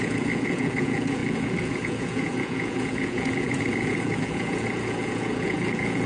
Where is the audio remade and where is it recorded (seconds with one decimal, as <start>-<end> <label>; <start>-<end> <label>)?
0.0-6.1 remade